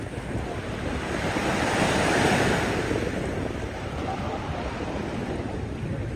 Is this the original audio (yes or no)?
yes